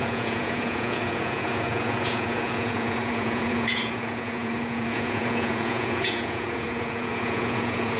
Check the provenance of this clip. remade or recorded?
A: remade